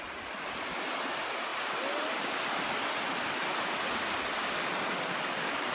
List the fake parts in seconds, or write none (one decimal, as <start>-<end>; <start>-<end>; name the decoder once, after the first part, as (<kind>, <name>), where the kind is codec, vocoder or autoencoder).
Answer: none